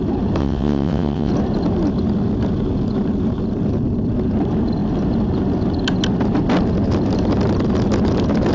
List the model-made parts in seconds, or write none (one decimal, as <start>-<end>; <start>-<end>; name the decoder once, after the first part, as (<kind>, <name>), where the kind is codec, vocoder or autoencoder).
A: 0.4-1.3 (vocoder, WaveNeXt)